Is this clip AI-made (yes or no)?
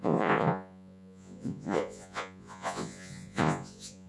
yes